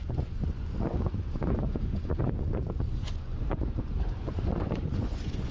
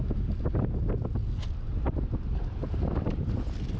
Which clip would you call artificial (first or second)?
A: first